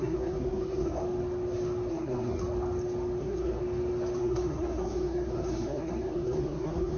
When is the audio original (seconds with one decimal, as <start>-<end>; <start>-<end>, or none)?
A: 1.0-1.9; 2.4-3.2; 3.6-4.2